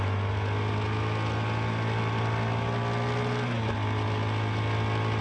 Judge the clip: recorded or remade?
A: recorded